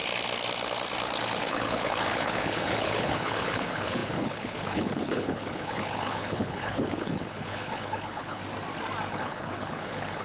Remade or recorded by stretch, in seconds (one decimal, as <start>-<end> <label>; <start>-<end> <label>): 0.0-1.5 recorded; 1.5-8.4 remade; 8.4-9.1 recorded; 9.1-10.2 remade